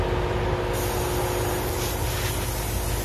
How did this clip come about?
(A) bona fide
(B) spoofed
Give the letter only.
A